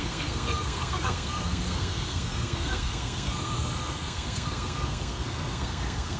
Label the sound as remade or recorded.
remade